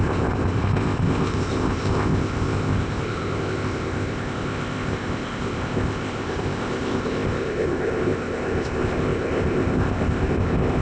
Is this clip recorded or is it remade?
remade